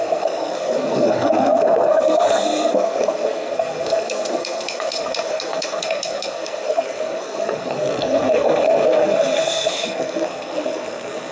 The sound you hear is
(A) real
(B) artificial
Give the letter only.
B